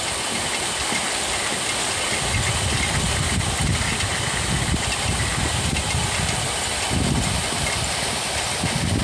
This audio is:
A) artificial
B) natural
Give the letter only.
B